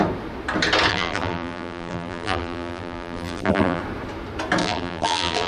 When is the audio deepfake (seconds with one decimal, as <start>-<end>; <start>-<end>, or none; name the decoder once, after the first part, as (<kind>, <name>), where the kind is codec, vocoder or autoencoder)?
0.9-3.8 (vocoder, BigVGAN v2); 4.6-5.5